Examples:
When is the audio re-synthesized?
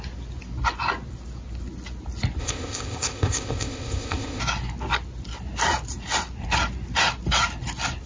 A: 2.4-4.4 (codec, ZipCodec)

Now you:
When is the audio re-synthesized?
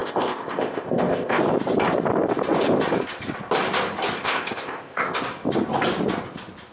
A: 0.0-1.4 (codec, ZipCodec); 4.2-5.2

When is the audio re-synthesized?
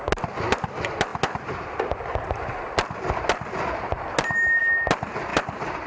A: none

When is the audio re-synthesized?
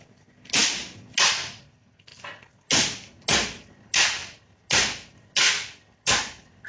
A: none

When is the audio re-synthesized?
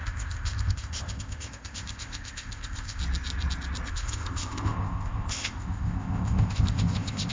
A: 0.0-3.0 (codec, ZipCodec); 3.9-7.3